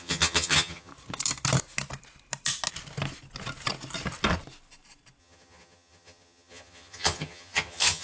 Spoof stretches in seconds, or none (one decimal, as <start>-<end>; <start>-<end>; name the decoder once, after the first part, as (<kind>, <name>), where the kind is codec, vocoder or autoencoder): 0.0-0.9 (vocoder, HiFi-GAN); 5.2-8.0